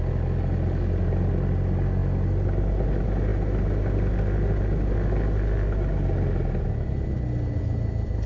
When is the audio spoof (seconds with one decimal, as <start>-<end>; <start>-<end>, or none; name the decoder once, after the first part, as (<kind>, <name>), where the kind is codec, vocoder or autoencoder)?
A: none